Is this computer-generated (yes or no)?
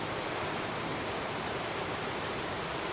yes